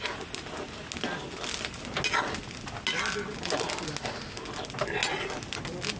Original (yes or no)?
yes